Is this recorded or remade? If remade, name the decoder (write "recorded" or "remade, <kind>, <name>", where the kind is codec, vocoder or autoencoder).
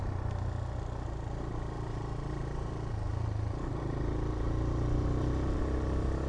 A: recorded